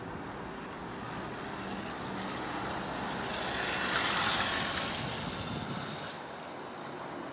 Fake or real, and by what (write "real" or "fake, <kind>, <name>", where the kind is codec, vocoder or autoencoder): real